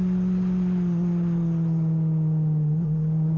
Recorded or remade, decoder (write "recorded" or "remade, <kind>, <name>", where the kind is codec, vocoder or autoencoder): recorded